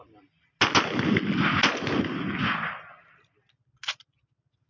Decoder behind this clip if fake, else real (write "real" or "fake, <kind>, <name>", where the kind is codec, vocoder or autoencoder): real